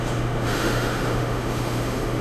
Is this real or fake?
fake